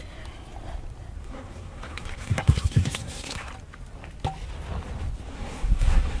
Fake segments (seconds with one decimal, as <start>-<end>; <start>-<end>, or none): 1.2-3.5; 5.3-6.2